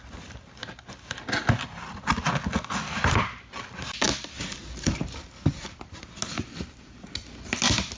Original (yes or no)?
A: yes